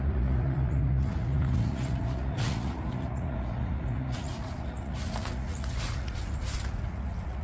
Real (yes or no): no